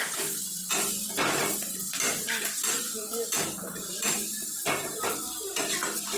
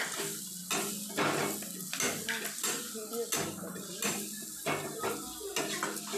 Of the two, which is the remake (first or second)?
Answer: first